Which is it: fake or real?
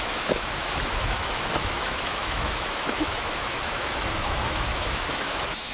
fake